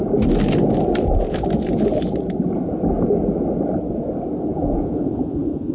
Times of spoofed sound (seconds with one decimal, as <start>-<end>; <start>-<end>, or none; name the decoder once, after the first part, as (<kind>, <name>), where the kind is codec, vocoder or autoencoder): 4.5-5.7 (vocoder, Vocos)